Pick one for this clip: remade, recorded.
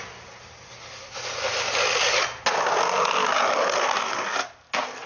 recorded